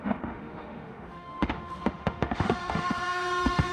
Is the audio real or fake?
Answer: fake